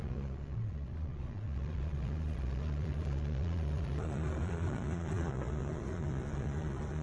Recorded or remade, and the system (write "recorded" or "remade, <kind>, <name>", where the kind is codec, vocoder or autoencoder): remade, vocoder, Vocos